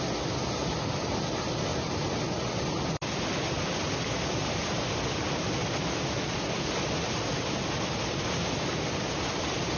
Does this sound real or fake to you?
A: real